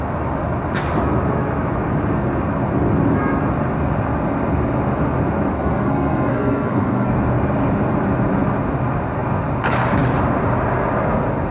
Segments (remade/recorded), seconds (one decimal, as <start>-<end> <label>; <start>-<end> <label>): 0.0-5.5 recorded; 5.5-7.1 remade; 7.1-11.5 recorded